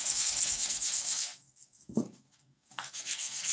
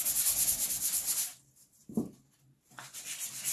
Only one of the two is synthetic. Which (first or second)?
first